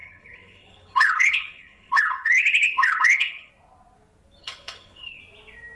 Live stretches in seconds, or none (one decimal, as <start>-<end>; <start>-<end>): 3.5-4.4; 5.2-5.8

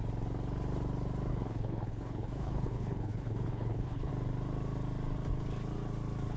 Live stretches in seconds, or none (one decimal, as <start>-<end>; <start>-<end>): 0.0-1.3; 4.1-6.4